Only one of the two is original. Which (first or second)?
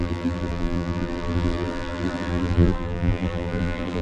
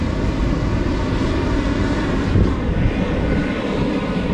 second